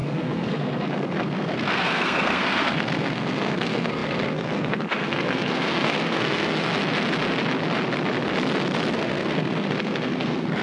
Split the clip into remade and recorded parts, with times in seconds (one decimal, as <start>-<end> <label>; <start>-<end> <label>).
0.0-6.7 remade; 6.7-8.9 recorded; 8.9-10.6 remade